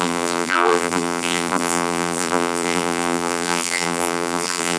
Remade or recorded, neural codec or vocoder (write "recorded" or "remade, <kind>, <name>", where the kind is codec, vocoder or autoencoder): remade, vocoder, BigVGAN v2